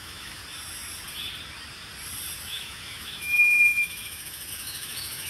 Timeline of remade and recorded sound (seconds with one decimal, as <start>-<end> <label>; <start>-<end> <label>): 0.0-0.4 remade; 0.4-2.4 recorded; 2.4-5.3 remade

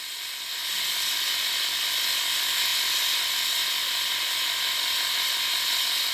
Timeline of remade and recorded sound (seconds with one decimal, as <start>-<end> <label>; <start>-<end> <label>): 0.0-6.1 recorded

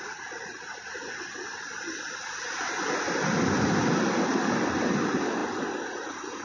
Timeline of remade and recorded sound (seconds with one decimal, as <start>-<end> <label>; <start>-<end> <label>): 0.0-6.4 recorded

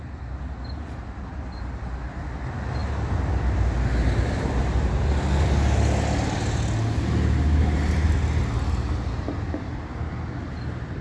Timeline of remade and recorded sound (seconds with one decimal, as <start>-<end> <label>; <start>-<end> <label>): 0.0-11.0 recorded

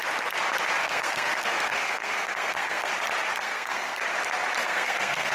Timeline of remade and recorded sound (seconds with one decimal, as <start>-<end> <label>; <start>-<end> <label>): 0.0-0.8 recorded; 0.8-2.9 remade; 2.9-3.4 recorded; 3.4-4.0 remade; 4.0-4.6 recorded; 4.6-5.3 remade